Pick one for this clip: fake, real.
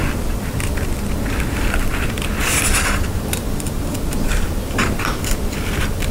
fake